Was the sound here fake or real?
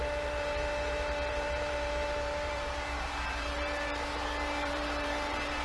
fake